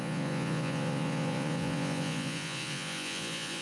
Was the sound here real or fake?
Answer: fake